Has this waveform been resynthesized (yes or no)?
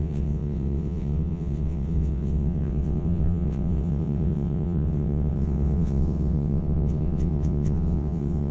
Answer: yes